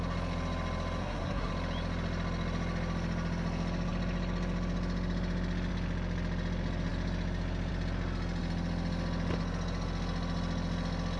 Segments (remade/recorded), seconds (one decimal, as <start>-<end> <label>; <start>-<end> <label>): 0.0-1.0 recorded; 1.0-1.5 remade; 1.5-11.2 recorded